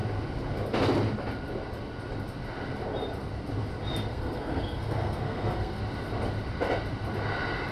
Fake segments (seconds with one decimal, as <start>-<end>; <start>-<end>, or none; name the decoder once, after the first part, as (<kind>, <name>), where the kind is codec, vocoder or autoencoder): 4.1-5.8 (codec, SNAC)